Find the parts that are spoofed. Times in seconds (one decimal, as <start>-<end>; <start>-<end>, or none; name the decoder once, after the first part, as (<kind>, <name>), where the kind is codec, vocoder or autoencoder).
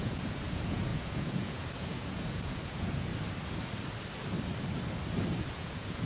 0.0-3.1 (vocoder, Vocos); 5.4-6.0